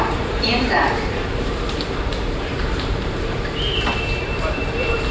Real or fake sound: fake